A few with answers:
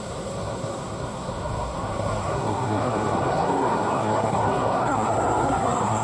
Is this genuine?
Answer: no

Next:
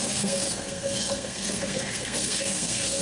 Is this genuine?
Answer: no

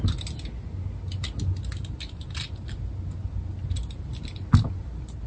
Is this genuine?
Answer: yes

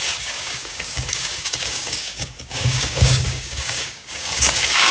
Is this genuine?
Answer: no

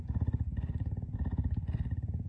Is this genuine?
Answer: yes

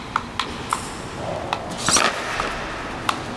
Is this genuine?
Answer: yes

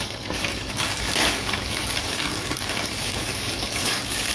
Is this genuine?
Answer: no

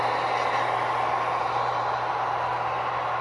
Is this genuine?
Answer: yes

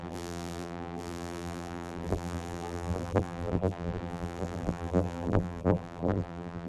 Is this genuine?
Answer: no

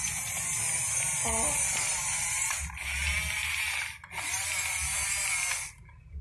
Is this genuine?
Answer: yes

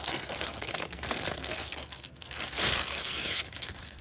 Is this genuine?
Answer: no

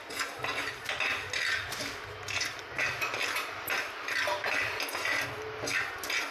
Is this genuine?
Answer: yes